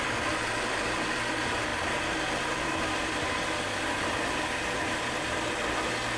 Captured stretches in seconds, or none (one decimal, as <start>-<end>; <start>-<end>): 0.0-6.2